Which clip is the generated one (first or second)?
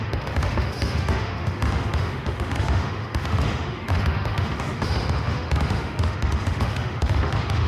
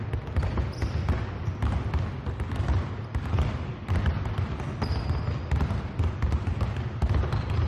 first